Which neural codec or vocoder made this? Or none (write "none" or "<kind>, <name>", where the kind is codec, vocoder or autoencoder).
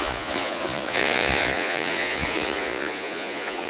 vocoder, Vocos